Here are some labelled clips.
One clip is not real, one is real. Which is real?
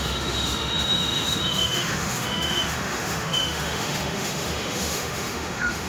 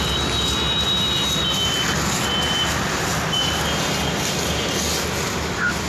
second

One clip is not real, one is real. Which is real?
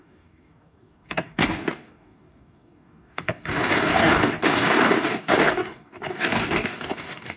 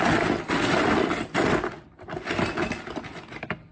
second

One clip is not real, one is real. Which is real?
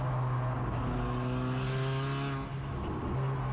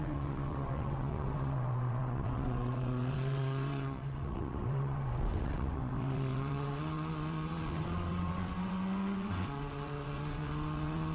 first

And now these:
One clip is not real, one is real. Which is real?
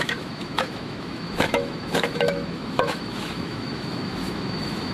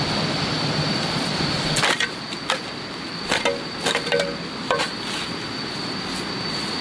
second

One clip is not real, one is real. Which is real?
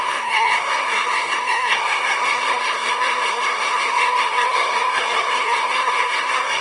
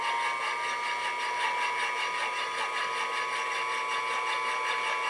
second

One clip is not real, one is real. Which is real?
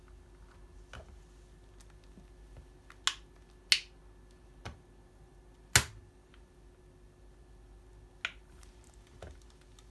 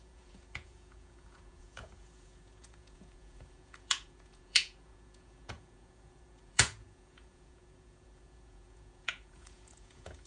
first